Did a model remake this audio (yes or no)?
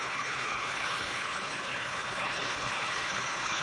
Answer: yes